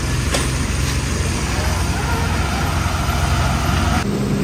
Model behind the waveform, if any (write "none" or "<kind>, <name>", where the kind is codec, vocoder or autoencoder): none